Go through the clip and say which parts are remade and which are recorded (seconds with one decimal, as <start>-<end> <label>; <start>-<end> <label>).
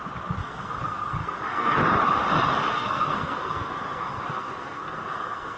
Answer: 0.0-0.4 recorded; 0.4-1.8 remade; 1.8-2.7 recorded; 2.7-5.6 remade